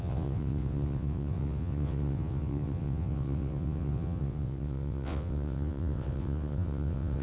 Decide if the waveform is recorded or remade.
remade